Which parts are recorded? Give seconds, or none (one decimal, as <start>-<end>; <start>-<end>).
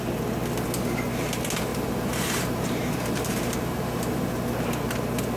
0.0-1.7; 4.3-5.4